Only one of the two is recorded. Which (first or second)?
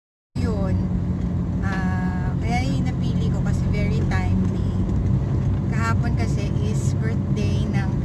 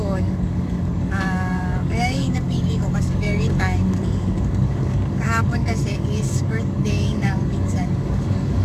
first